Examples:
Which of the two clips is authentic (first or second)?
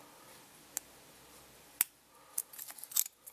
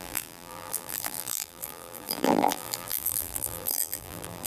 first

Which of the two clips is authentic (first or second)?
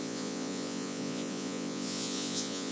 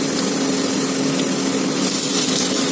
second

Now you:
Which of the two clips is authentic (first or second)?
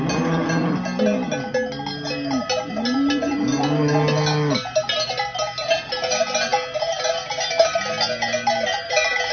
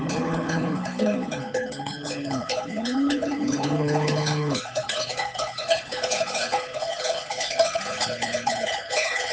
first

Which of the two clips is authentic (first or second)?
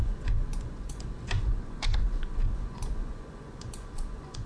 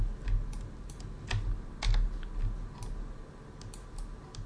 second